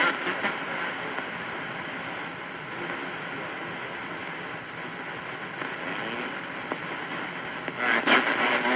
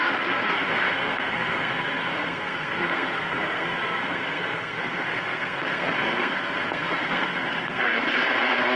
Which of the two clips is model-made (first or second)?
second